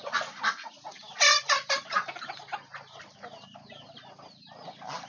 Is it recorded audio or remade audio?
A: remade